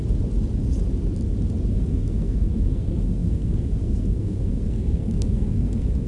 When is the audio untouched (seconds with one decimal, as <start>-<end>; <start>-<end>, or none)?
0.0-1.7